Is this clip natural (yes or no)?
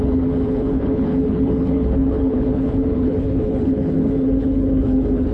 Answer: no